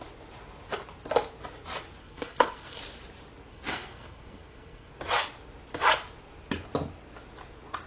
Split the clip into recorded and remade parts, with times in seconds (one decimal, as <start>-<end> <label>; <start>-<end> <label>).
0.0-2.0 recorded; 2.0-2.8 remade; 2.8-3.5 recorded; 3.5-4.9 remade; 4.9-7.9 recorded